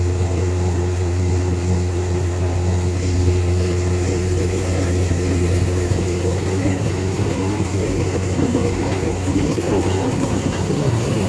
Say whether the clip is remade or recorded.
remade